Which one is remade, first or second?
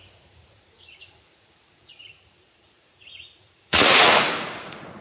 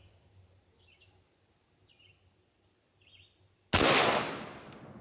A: first